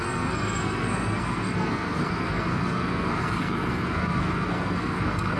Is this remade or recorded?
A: remade